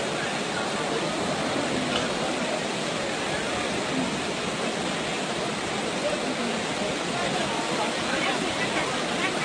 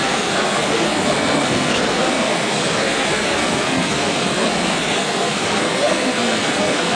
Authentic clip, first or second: first